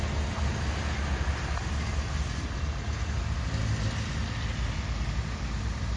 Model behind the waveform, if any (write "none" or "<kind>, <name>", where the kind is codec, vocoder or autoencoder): none